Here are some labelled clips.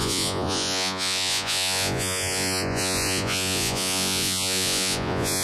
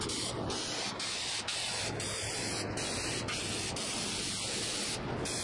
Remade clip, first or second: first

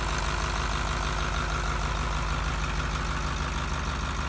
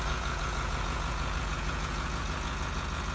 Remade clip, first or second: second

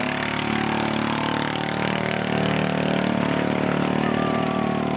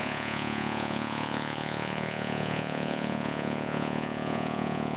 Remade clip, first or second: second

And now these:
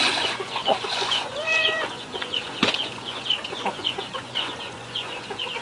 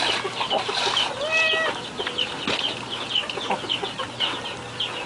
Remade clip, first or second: first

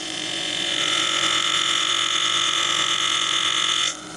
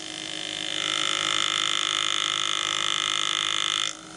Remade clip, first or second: first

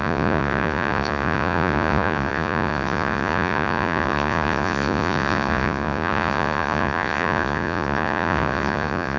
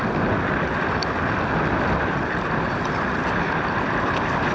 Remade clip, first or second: first